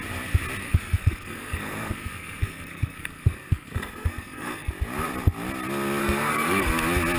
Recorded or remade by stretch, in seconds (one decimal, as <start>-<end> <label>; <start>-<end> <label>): 0.0-0.6 recorded; 0.6-4.7 remade; 4.7-6.0 recorded; 6.0-6.7 remade; 6.7-7.2 recorded